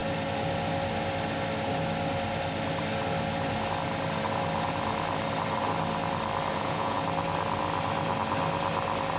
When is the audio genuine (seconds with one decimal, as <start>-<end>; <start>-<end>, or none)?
0.0-6.5; 7.0-9.2